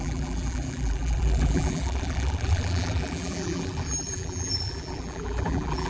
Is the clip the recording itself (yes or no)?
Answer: no